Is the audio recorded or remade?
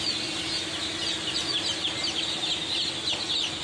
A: recorded